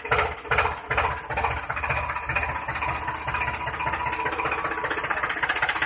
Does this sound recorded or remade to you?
recorded